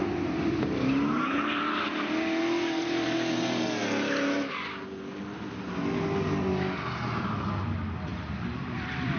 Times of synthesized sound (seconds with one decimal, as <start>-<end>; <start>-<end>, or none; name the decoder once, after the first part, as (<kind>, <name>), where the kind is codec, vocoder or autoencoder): 8.1-9.2 (vocoder, BigVGAN v2)